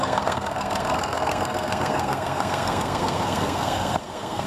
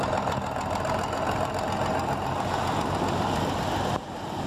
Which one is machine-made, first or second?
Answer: first